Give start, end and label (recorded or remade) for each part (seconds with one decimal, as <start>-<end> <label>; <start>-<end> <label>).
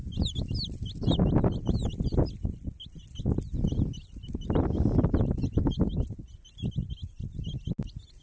0.0-8.2 recorded